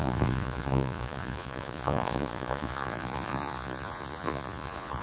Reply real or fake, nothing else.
fake